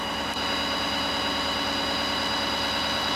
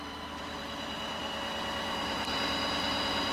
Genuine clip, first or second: first